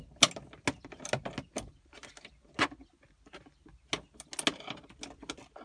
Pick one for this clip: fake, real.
real